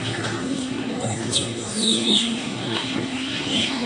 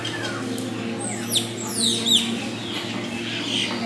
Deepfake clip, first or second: first